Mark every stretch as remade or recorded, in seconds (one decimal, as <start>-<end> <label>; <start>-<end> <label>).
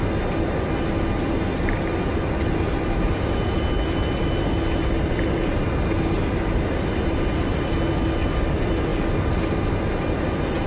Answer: 0.0-10.7 recorded